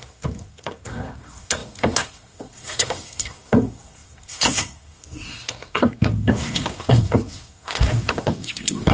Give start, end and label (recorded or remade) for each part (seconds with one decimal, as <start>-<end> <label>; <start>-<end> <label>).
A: 0.0-8.9 remade